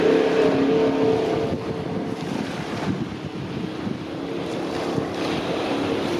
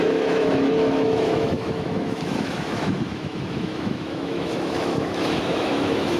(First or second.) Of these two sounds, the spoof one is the second